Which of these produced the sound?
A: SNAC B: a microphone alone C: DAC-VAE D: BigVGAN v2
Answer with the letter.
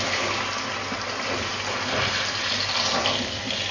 B